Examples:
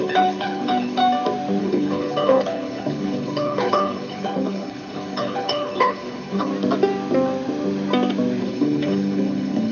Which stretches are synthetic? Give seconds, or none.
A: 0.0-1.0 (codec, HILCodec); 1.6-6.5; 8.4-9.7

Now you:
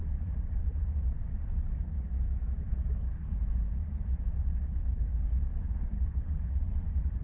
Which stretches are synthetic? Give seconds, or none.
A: 0.0-1.6 (vocoder, BigVGAN v2); 2.7-7.2

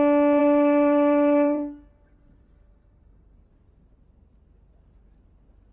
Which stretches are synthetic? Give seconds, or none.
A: 0.4-3.5 (vocoder, BigVGAN v2)